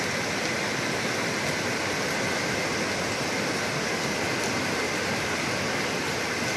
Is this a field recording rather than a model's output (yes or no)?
yes